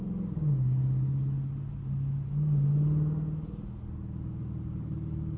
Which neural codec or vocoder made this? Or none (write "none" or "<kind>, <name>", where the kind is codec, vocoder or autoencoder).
none